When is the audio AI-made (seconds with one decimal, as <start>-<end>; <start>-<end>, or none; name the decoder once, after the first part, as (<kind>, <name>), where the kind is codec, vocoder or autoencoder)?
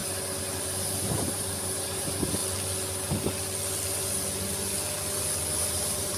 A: 0.6-2.4 (vocoder, BigVGAN v2); 5.6-6.2